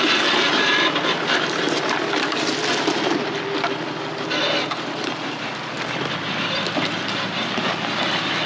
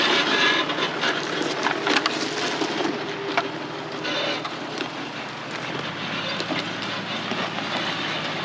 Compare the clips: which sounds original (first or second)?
second